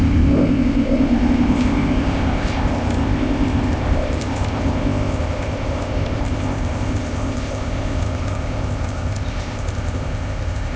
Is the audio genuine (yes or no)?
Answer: no